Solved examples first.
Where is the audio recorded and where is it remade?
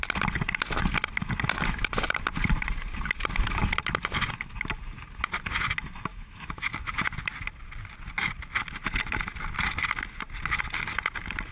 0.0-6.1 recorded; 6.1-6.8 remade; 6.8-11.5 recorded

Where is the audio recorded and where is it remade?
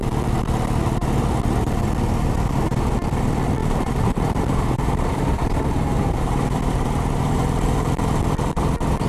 0.0-3.6 recorded; 3.6-8.2 remade; 8.2-9.1 recorded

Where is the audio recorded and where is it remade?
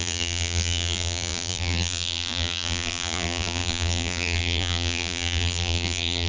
0.0-6.3 remade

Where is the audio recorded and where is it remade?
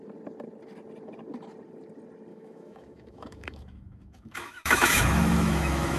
0.0-2.3 recorded; 2.3-6.0 remade